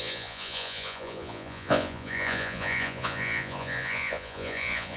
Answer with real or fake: fake